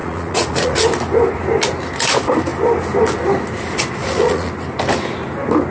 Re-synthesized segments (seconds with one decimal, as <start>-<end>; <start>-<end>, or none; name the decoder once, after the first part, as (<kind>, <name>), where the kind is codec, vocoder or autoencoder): 0.0-0.8 (vocoder, Vocos); 4.0-4.5